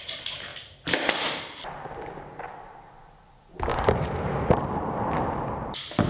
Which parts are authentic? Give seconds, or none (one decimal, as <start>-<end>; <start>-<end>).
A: 0.0-3.7